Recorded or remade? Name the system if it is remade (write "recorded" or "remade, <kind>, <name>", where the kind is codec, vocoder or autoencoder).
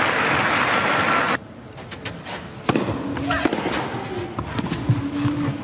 recorded